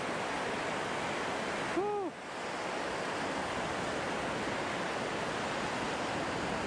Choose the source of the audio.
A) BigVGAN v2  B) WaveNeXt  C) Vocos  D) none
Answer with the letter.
D